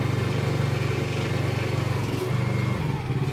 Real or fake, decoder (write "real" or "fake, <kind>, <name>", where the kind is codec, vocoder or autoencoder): real